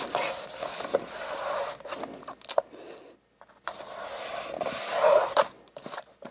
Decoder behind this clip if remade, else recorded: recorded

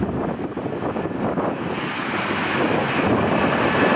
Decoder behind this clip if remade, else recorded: recorded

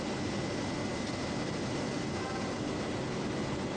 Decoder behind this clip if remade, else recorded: recorded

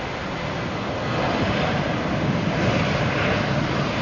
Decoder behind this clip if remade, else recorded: recorded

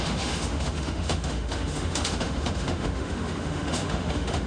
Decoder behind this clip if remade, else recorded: remade, autoencoder, DAC-VAE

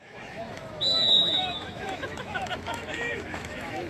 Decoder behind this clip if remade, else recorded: remade, autoencoder, DAC-VAE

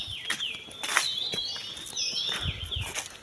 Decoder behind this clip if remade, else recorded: recorded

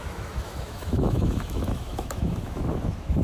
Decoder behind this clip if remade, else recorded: remade, autoencoder, DAC-VAE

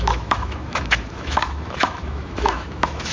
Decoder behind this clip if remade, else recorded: remade, autoencoder, DAC-VAE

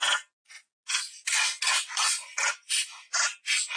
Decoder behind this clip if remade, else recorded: recorded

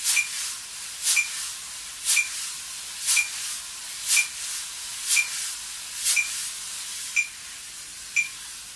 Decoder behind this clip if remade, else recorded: recorded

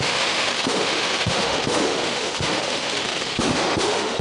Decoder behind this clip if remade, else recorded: remade, autoencoder, DAC-VAE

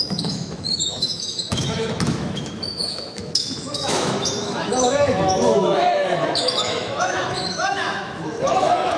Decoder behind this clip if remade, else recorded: remade, autoencoder, DAC-VAE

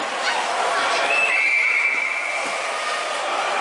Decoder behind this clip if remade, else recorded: recorded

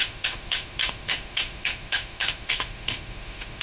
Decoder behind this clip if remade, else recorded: remade, autoencoder, DAC-VAE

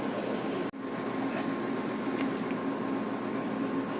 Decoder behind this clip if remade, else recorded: recorded